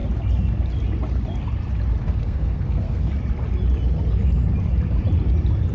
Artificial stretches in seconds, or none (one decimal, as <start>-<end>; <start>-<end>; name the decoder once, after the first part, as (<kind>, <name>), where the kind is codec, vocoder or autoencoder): 2.0-3.1 (codec, SNAC)